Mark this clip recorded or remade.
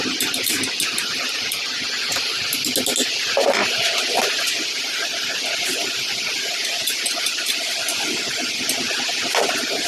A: recorded